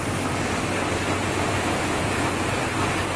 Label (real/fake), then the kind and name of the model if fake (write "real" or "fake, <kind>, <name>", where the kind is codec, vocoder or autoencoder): real